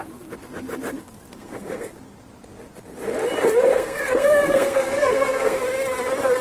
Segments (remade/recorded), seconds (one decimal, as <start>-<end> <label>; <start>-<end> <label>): 0.0-1.3 recorded; 1.3-1.9 remade; 1.9-3.7 recorded; 3.7-5.6 remade; 5.6-6.4 recorded